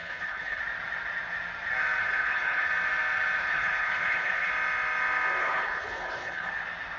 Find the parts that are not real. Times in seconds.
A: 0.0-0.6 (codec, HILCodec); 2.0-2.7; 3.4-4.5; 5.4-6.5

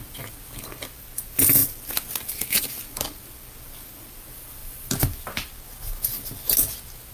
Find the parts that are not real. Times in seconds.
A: none

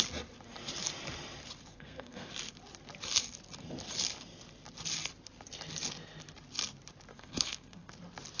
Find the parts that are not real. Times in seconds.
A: 1.7-2.3 (codec, SNAC); 7.1-7.9

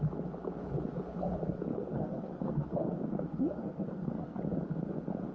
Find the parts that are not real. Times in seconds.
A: 1.7-4.4 (codec, SNAC)

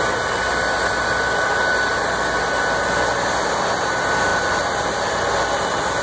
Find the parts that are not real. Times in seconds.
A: none

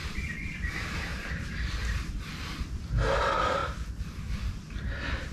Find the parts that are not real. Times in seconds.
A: 3.6-4.8 (vocoder, BigVGAN v2)

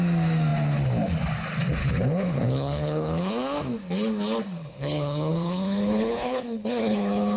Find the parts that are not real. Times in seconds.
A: 1.8-3.3 (codec, HILCodec); 4.6-7.4

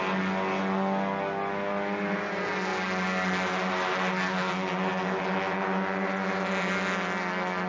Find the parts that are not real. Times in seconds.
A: none